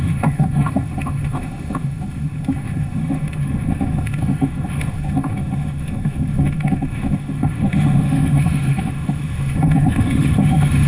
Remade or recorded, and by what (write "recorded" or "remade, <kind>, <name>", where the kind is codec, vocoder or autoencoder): remade, autoencoder, DAC-VAE